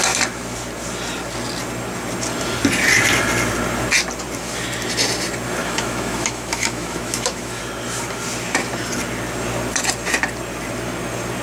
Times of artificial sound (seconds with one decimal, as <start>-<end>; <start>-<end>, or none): 5.6-7.6